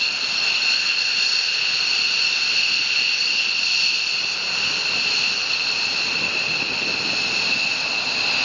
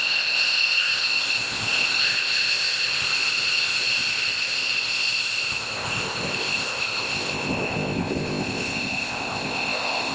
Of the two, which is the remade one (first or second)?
second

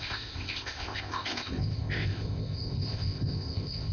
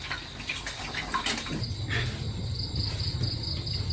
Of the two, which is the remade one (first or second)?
first